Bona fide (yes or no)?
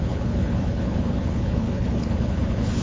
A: no